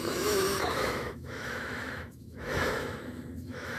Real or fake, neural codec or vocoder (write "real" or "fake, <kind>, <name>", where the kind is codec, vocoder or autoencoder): fake, autoencoder, DAC-VAE